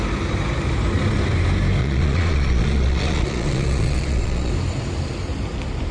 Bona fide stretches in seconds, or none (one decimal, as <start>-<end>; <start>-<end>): 0.0-1.8; 4.5-5.9